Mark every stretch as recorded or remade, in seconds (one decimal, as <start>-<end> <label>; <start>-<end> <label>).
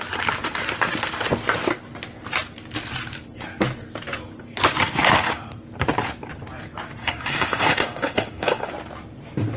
0.0-7.0 recorded; 7.0-8.7 remade; 8.7-9.6 recorded